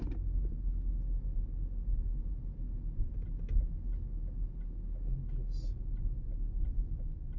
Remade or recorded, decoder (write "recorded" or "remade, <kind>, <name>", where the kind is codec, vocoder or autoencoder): recorded